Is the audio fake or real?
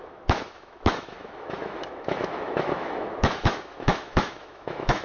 fake